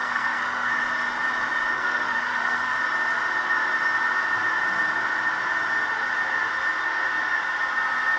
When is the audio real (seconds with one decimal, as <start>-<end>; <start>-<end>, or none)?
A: 0.7-1.7; 2.8-8.2